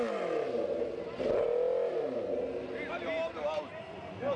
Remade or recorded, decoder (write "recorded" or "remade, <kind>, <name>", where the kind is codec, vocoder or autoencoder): recorded